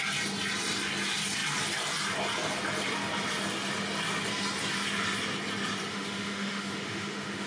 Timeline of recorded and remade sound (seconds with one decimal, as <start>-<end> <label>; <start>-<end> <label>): 0.0-5.9 recorded; 5.9-7.5 remade